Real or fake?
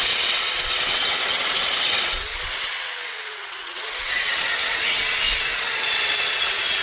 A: fake